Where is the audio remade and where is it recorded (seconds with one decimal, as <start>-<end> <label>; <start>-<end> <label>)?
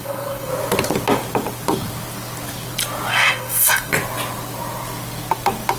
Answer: 0.0-0.5 remade; 0.5-3.1 recorded; 3.1-3.9 remade; 3.9-5.8 recorded